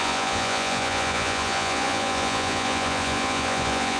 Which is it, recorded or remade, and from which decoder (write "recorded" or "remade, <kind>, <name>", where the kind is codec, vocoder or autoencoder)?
remade, vocoder, Vocos